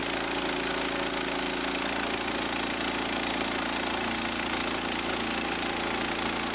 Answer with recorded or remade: recorded